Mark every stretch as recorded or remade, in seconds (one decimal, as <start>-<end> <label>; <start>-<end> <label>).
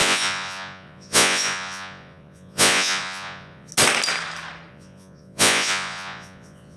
0.0-3.7 remade; 3.7-4.7 recorded; 4.7-6.8 remade